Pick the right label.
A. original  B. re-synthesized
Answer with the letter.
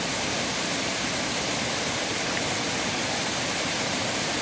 A